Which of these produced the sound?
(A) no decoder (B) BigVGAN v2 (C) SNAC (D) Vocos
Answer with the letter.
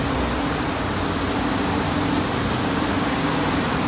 A